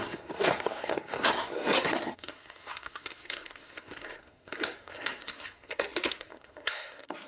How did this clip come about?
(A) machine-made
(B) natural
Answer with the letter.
A